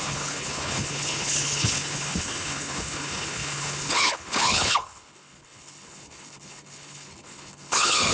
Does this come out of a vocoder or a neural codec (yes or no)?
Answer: yes